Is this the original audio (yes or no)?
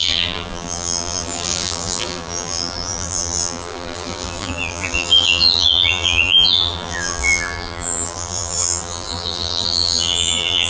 no